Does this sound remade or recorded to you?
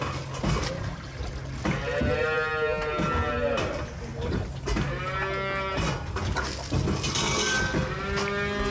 recorded